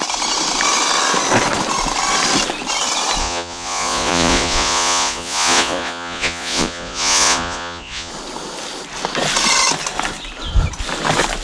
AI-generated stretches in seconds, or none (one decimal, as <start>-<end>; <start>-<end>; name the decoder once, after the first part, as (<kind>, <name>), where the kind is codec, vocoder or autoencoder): 3.2-8.1 (vocoder, Vocos)